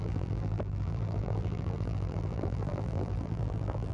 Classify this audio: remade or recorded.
remade